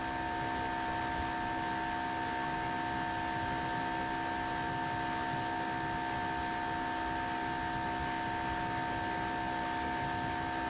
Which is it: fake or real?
real